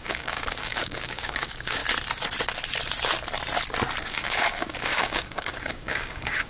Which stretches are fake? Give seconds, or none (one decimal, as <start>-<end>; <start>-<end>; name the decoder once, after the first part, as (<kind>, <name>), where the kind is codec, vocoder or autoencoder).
0.0-1.8 (codec, DAC); 4.0-6.5